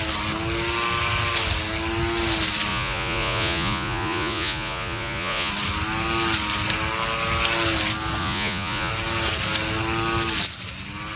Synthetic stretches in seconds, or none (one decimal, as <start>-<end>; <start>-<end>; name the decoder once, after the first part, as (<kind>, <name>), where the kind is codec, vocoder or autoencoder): 2.7-5.5 (vocoder, Vocos); 8.2-8.9